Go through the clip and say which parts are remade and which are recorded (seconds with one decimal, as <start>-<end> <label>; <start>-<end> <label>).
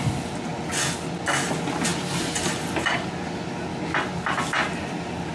0.0-5.3 recorded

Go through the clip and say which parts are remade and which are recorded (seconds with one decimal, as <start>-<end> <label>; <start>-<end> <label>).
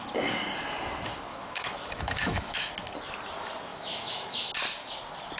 0.0-1.3 recorded; 1.3-2.7 remade; 2.7-3.7 recorded; 3.7-4.5 remade; 4.5-5.4 recorded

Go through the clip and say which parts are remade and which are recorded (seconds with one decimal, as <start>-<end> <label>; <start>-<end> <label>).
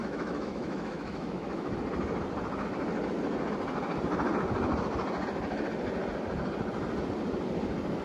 0.0-1.7 remade; 1.7-8.0 recorded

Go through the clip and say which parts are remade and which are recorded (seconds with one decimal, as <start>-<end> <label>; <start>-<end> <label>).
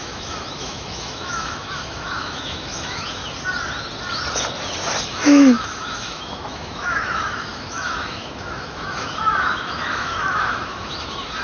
0.0-3.2 remade; 3.2-5.1 recorded; 5.1-11.4 remade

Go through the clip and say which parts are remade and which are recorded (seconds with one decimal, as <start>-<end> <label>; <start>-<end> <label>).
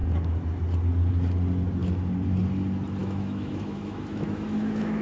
0.0-3.0 recorded; 3.0-5.0 remade